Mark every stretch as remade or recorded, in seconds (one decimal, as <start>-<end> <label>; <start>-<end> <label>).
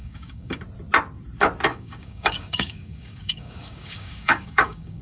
0.0-0.6 remade; 0.6-1.7 recorded; 1.7-5.0 remade